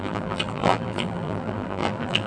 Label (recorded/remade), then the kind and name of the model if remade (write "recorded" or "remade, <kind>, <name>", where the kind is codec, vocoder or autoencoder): remade, vocoder, BigVGAN v2